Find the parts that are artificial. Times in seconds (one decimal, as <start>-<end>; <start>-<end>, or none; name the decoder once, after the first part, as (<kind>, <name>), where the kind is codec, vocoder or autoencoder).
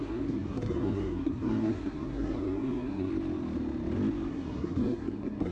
0.0-3.1 (codec, SNAC); 4.3-5.5